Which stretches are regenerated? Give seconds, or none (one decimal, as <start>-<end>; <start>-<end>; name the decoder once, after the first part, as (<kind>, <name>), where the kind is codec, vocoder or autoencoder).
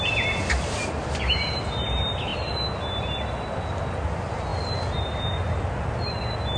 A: none